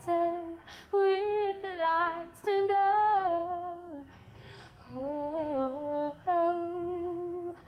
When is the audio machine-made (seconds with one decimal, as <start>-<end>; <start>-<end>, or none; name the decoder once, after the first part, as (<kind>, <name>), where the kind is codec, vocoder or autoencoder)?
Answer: 0.0-7.7 (codec, SNAC)